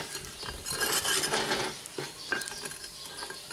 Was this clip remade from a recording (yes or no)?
no